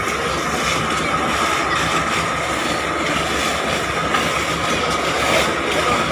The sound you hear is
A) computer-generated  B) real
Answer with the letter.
B